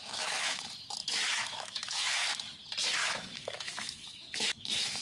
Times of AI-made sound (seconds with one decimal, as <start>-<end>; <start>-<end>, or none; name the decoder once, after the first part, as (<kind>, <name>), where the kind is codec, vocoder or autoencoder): 0.0-0.6 (autoencoder, DAC-VAE); 1.0-2.1; 3.0-5.0